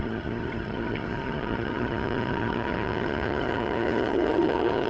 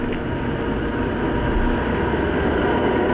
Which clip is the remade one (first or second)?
first